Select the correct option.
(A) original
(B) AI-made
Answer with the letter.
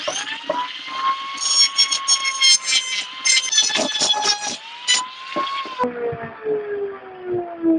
A